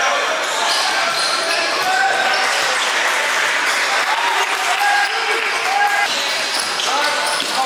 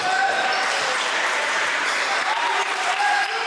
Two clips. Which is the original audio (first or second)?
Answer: first